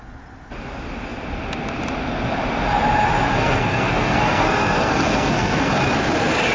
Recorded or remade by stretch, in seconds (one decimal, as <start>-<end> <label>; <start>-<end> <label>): 0.0-3.3 recorded; 3.3-5.7 remade; 5.7-6.5 recorded